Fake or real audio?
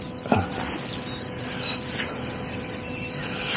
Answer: real